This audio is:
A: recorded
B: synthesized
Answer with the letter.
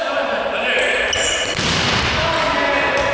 A